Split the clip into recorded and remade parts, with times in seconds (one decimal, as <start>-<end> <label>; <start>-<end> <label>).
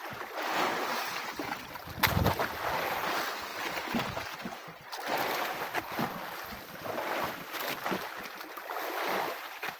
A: 0.0-9.8 recorded